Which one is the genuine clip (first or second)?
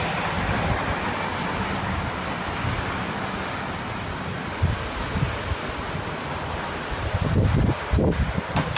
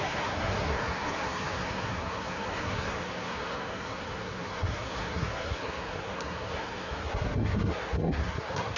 first